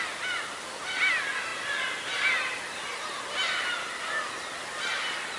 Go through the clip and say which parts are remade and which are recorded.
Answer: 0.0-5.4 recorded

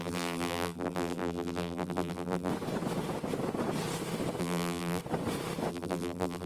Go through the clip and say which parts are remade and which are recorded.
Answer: 0.0-2.5 remade; 2.5-4.4 recorded; 4.4-5.0 remade; 5.0-5.7 recorded; 5.7-6.5 remade

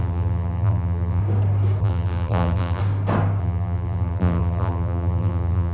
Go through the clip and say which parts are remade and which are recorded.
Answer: 0.0-1.2 remade; 1.2-1.8 recorded; 1.8-2.8 remade; 2.8-3.4 recorded; 3.4-5.7 remade